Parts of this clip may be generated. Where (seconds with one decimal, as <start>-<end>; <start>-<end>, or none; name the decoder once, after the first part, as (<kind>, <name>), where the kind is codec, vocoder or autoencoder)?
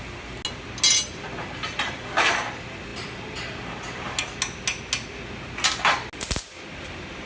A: none